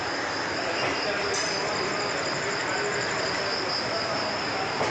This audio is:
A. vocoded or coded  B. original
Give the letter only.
B